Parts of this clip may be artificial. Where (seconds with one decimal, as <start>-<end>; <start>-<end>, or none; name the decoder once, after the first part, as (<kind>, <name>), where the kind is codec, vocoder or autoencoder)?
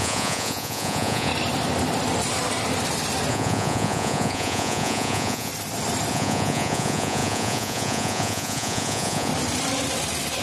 0.0-1.3 (vocoder, Vocos); 3.3-5.5; 6.1-9.3